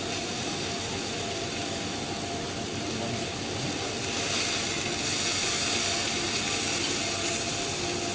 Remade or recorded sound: recorded